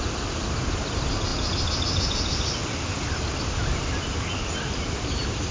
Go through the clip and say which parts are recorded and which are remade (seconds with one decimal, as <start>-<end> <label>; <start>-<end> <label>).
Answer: 0.0-5.5 recorded